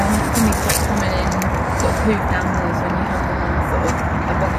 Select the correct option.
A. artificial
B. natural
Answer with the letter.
B